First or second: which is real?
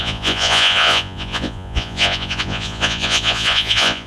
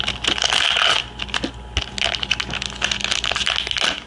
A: second